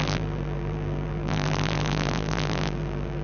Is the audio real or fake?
fake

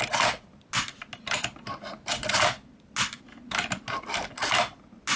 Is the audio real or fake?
real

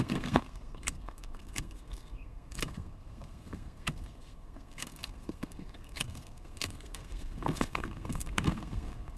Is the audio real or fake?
fake